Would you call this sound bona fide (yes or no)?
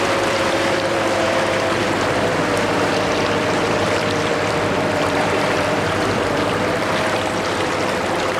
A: no